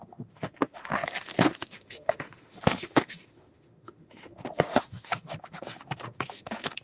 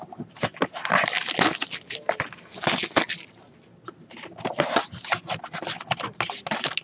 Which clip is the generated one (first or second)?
first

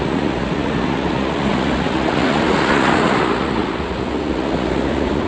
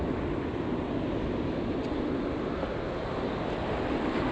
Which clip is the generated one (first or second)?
first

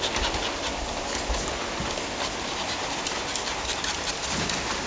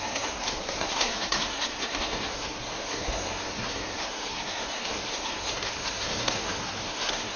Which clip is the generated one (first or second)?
second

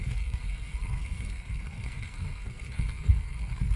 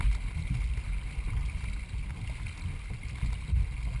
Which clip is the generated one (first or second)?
first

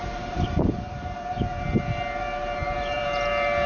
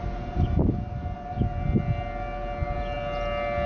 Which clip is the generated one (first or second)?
first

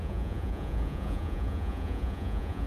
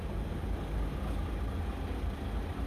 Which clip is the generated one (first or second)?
first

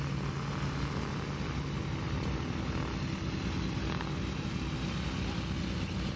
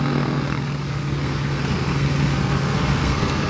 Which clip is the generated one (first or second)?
second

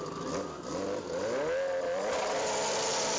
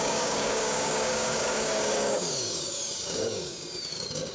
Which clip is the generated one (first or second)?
second